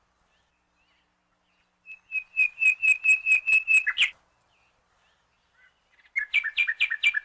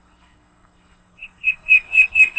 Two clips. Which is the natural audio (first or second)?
first